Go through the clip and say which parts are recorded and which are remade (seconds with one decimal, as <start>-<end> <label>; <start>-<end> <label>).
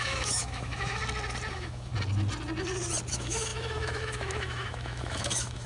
0.0-1.0 remade; 1.0-1.5 recorded; 1.5-1.9 remade; 1.9-3.1 recorded; 3.1-5.7 remade